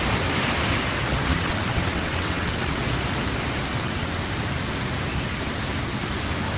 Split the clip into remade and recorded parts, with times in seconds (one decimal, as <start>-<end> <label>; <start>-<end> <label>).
0.0-1.2 recorded; 1.2-2.8 remade; 2.8-3.7 recorded; 3.7-4.2 remade; 4.2-6.6 recorded